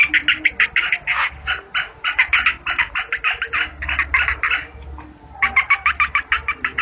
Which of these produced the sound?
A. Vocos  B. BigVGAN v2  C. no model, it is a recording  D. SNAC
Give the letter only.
C